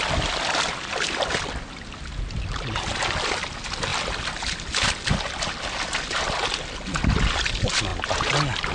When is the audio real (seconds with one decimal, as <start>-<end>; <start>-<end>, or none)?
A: 0.0-8.7